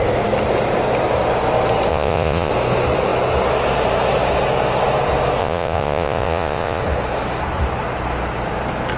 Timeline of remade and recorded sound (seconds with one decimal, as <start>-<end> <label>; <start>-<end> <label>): 0.0-1.9 recorded; 1.9-2.5 remade; 2.5-5.4 recorded; 5.4-6.8 remade; 6.8-9.0 recorded

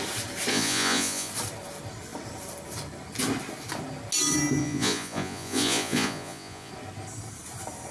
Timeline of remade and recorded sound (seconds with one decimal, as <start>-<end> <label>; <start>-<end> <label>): 0.0-0.5 recorded; 0.5-1.3 remade; 1.3-4.6 recorded; 4.6-6.7 remade; 6.7-7.9 recorded